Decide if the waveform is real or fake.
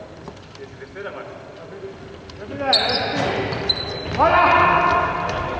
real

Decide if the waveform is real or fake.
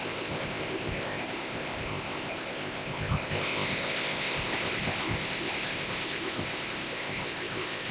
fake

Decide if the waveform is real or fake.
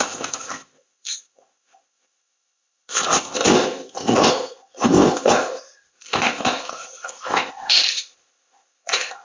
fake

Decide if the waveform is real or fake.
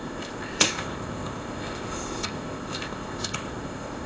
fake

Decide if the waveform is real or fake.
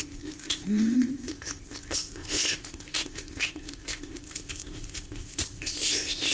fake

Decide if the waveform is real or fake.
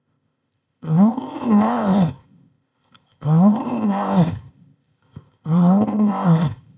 fake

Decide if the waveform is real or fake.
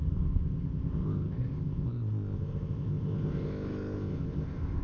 fake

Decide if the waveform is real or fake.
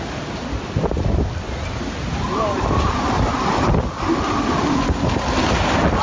real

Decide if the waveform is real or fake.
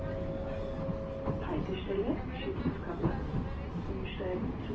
real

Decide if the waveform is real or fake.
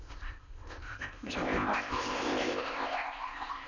fake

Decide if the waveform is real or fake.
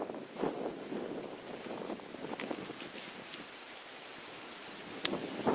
real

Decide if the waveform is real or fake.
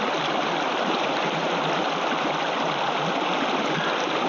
real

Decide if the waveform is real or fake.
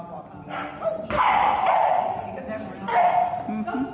real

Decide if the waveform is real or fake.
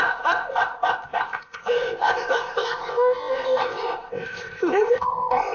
fake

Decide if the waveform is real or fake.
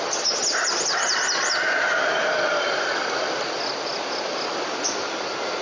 real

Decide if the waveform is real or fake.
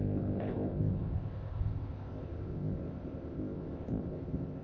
fake